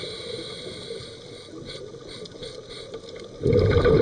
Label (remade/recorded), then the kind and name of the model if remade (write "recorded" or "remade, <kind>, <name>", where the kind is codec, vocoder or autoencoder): recorded